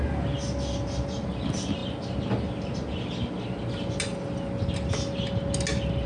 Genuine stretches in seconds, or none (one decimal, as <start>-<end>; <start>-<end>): 0.0-6.1